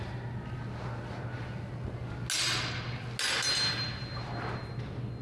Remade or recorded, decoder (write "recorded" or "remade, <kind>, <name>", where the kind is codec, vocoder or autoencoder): recorded